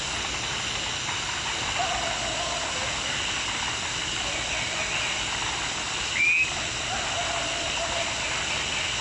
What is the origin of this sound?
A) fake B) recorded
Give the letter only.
B